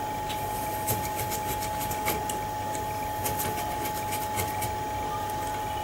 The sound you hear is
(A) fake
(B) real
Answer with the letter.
B